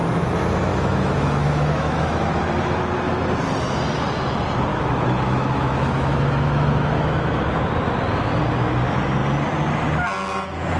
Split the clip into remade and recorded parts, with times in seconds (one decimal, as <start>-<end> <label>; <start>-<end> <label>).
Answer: 0.0-0.7 recorded; 0.7-2.4 remade; 2.4-4.7 recorded; 4.7-7.4 remade; 7.4-10.8 recorded